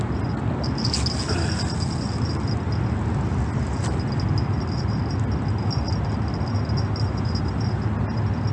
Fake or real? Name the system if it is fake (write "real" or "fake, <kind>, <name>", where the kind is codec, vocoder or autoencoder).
real